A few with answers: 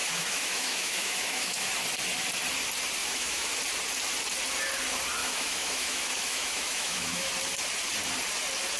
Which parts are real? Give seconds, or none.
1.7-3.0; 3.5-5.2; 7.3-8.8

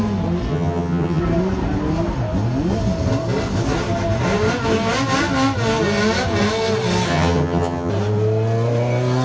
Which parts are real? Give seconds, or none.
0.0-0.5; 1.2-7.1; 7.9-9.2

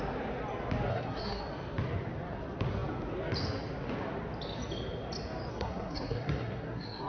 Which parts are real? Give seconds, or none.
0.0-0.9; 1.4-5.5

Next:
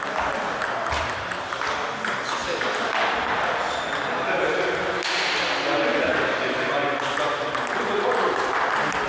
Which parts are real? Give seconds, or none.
0.0-9.1

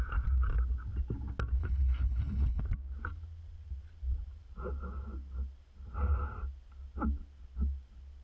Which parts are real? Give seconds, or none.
0.0-1.6; 2.6-8.2

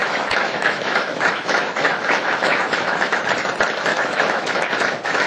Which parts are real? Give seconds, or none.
3.2-3.9

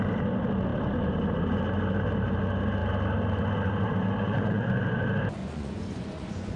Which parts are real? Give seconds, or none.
0.0-4.2; 4.8-5.4

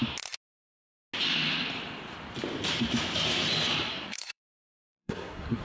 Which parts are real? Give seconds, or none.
0.0-3.9